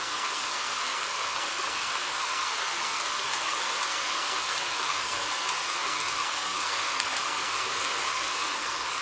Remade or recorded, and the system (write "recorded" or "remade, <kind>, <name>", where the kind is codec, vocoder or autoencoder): remade, codec, SNAC